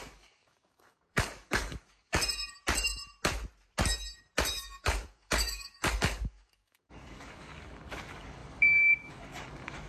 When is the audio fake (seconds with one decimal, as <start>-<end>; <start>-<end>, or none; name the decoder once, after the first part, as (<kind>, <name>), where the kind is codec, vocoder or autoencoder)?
0.0-2.2 (codec, DAC); 4.5-9.9